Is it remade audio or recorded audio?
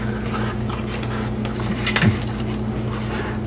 recorded